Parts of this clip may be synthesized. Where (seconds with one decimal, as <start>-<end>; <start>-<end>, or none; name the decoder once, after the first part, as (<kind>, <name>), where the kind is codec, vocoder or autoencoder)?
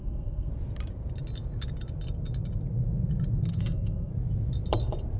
0.0-0.5 (codec, SNAC); 3.6-4.1